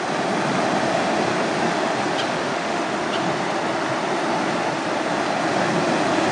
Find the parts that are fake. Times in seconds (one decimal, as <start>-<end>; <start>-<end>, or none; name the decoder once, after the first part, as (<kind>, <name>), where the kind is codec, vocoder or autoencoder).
2.3-2.8 (autoencoder, DAC-VAE)